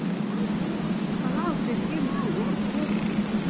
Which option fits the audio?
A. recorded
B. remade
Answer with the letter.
A